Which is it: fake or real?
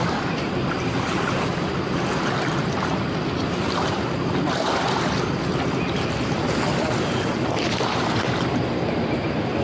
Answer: real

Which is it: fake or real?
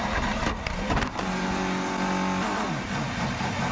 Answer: real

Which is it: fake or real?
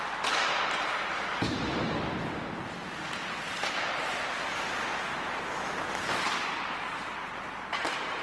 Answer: fake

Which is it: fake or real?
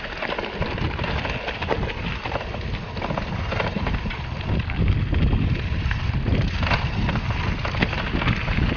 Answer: real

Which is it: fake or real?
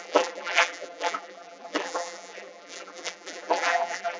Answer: fake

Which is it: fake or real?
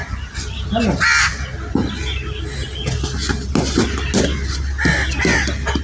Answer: real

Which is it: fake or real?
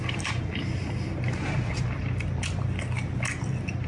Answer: fake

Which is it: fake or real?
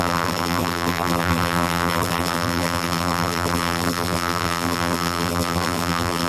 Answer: fake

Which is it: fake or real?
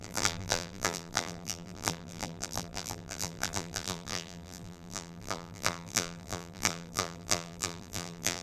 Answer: fake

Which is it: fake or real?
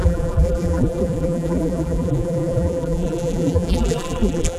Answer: fake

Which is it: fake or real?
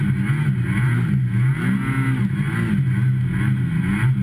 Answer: real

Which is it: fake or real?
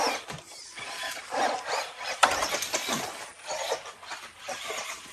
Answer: fake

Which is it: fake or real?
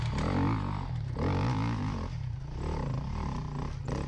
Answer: real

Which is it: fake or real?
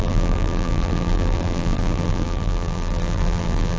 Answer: fake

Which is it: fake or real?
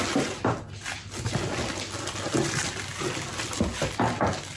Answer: real